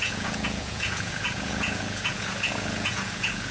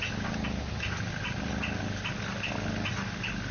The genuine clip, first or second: second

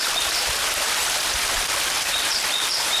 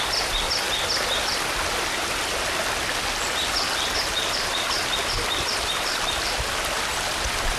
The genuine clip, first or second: second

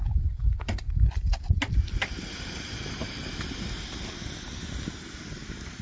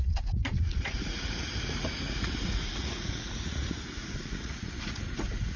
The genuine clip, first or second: first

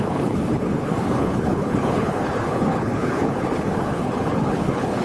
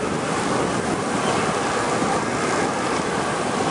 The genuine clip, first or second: second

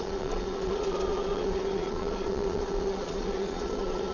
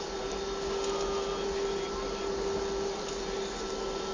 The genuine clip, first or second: second